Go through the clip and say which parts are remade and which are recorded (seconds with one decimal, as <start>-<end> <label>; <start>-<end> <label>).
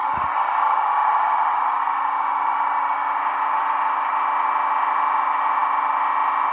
0.0-3.6 recorded; 3.6-4.1 remade; 4.1-6.5 recorded